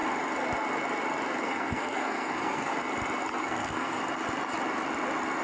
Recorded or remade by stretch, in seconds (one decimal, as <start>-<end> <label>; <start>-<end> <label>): 0.0-1.4 recorded; 1.4-2.7 remade; 2.7-3.4 recorded; 3.4-4.0 remade; 4.0-5.4 recorded

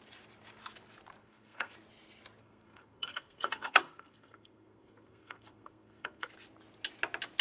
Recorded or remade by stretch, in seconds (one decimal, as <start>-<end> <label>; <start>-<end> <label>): 0.0-1.2 recorded; 1.2-1.7 remade; 1.7-2.4 recorded; 2.4-6.3 remade; 6.3-7.4 recorded

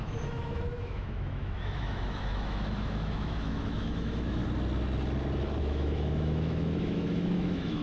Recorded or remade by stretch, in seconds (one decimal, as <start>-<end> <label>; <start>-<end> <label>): 0.0-4.4 remade; 4.4-5.6 recorded; 5.6-7.8 remade

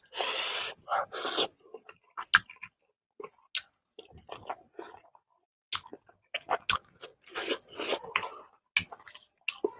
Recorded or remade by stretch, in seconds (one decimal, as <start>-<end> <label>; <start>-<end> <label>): 0.0-7.1 recorded; 7.1-8.0 remade; 8.0-9.8 recorded

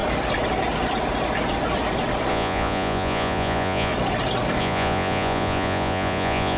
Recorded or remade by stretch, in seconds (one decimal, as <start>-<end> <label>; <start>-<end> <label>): 0.0-2.3 recorded; 2.3-3.9 remade; 3.9-4.6 recorded; 4.6-6.6 remade